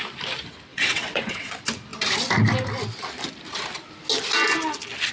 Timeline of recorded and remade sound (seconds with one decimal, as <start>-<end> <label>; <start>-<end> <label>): 0.0-0.7 recorded; 0.7-1.5 remade; 1.5-5.1 recorded